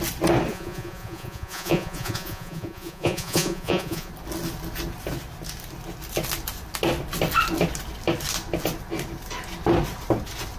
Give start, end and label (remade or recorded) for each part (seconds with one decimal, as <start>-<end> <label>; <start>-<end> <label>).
0.0-0.5 recorded; 0.5-4.1 remade; 4.1-10.6 recorded

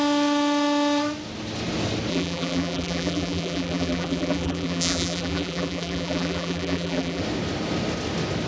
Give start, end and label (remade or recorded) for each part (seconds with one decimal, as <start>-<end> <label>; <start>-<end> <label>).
0.0-2.1 recorded; 2.1-7.2 remade; 7.2-8.5 recorded